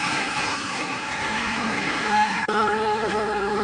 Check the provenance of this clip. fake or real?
fake